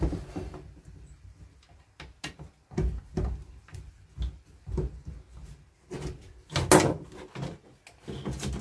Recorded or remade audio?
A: recorded